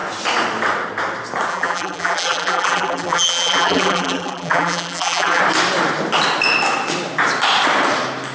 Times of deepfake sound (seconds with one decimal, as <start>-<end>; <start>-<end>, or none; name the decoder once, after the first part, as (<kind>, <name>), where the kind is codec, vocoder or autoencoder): 1.5-5.4 (vocoder, BigVGAN v2)